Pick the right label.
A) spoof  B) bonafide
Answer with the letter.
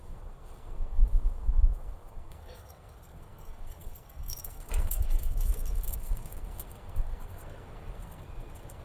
A